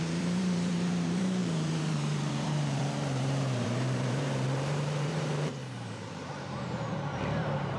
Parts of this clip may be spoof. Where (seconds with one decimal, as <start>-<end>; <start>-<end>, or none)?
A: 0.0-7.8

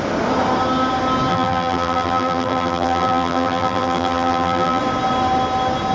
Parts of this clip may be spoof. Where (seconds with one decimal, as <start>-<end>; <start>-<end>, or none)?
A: 1.3-4.8

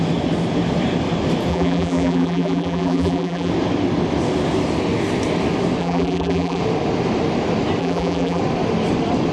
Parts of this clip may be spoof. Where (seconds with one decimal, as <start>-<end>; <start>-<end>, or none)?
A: 1.5-3.5; 5.8-6.6; 7.8-8.4